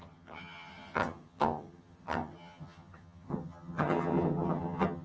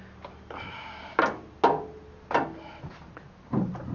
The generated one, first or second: first